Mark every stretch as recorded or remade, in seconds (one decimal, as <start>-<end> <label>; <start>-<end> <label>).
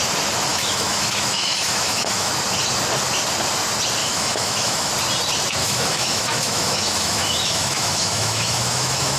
0.0-0.5 recorded; 0.5-2.3 remade; 2.3-4.0 recorded; 4.0-4.9 remade; 4.9-5.6 recorded; 5.6-9.2 remade